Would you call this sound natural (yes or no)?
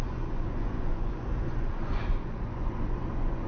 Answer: no